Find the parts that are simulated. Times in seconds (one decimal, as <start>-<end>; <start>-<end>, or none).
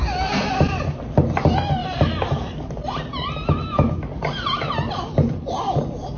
none